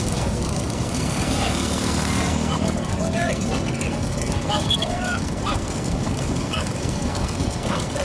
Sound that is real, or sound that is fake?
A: fake